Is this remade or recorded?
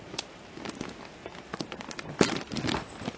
recorded